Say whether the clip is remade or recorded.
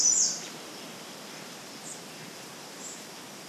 remade